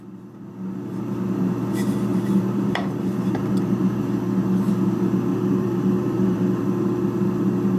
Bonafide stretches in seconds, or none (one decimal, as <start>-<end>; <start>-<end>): 0.0-2.1; 3.6-5.3; 6.6-7.8